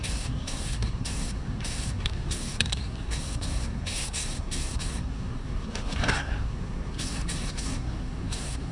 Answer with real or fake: fake